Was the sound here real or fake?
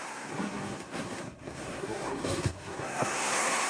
fake